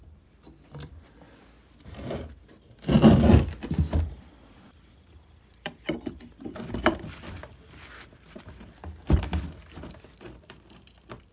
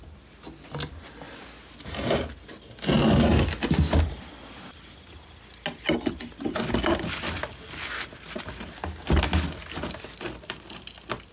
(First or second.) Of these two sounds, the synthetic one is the first